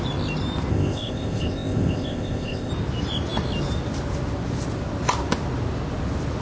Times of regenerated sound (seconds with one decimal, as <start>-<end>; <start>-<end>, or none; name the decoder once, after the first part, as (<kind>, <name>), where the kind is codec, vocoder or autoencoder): 0.7-2.7 (codec, ZipCodec)